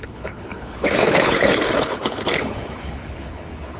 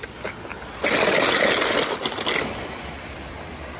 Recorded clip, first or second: second